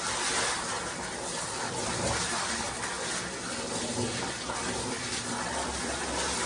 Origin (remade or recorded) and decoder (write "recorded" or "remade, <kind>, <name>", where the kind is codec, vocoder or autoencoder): recorded